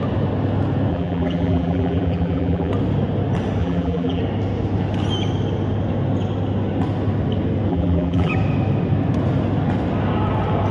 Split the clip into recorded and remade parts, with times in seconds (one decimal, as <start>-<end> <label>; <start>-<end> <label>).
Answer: 0.0-0.9 recorded; 0.9-2.7 remade; 2.7-3.6 recorded; 3.6-4.2 remade; 4.2-7.7 recorded; 7.7-8.3 remade; 8.3-10.7 recorded